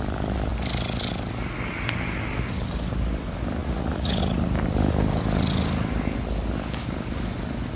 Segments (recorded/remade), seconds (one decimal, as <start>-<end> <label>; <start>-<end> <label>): 0.0-3.6 recorded; 3.6-4.2 remade; 4.2-7.8 recorded